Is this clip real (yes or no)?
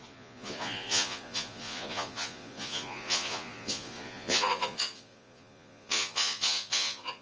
no